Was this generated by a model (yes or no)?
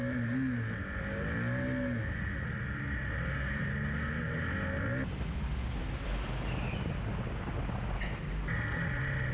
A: no